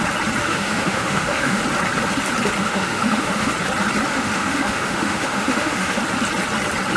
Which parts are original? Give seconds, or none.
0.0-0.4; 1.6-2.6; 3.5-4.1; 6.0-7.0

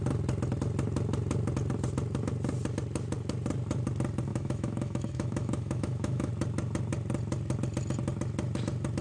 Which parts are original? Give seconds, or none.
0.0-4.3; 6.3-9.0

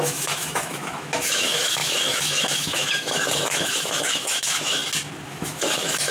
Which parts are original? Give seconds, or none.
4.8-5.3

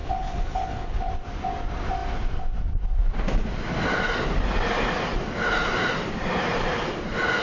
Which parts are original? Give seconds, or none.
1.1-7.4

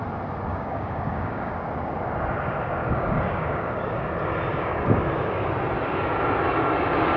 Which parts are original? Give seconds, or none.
0.0-0.5; 1.5-2.8; 4.1-4.5; 5.5-7.2

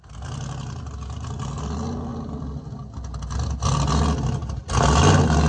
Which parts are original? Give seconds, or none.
0.0-5.5